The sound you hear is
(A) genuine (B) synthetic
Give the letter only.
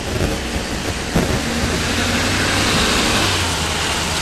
A